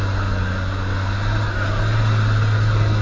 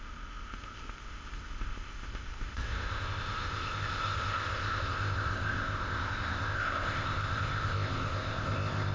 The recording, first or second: first